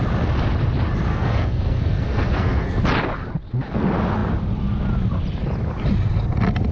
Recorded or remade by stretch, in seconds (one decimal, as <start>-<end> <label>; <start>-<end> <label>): 0.0-1.1 recorded; 1.1-2.8 remade; 2.8-6.7 recorded